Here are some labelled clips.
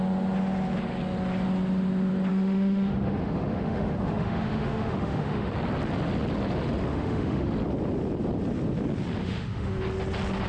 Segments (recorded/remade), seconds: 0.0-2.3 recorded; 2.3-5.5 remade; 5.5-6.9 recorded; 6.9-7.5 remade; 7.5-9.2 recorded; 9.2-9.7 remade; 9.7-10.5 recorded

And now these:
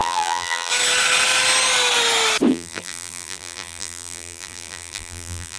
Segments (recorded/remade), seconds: 0.0-0.7 remade; 0.7-2.5 recorded; 2.5-5.6 remade

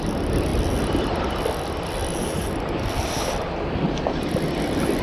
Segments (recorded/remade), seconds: 0.0-5.0 remade